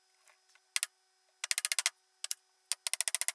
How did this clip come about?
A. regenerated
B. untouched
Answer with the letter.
B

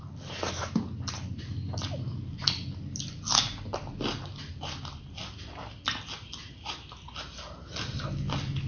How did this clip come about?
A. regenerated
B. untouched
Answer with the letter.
B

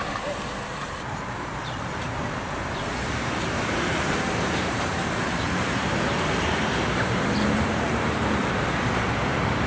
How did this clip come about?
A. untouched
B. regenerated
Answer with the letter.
B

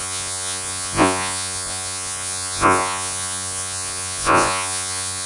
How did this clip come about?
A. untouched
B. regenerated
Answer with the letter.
B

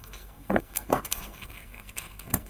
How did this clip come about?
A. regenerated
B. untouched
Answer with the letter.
A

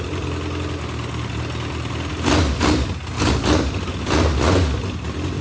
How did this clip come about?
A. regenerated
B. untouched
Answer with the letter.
B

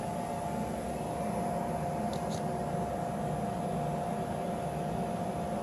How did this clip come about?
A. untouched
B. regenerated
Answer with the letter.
A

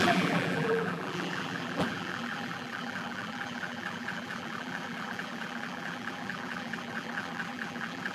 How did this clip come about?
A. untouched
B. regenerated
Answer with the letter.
B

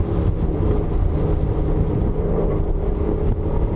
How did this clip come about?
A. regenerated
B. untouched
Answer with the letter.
A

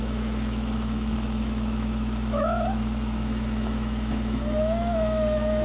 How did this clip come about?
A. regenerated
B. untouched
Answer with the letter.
A